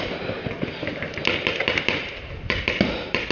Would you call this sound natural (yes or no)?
yes